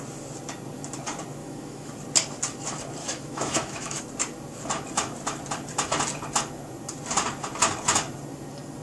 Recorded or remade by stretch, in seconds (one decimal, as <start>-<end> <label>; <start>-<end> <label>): 0.0-1.4 recorded; 1.4-1.9 remade; 1.9-3.0 recorded; 3.0-4.0 remade; 4.0-8.8 recorded